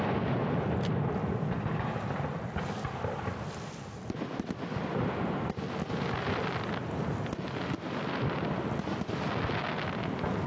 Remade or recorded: recorded